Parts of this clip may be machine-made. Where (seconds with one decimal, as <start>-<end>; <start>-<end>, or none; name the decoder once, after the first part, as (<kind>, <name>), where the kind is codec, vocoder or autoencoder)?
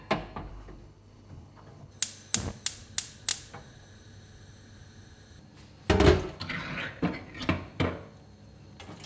0.5-1.9 (codec, HILCodec)